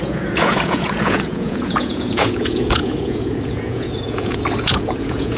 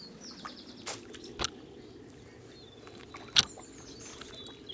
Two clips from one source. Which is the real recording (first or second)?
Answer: second